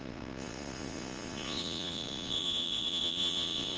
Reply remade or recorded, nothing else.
remade